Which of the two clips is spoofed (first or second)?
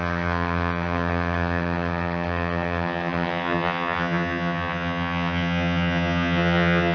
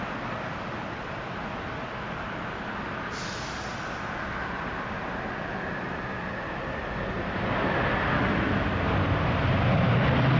first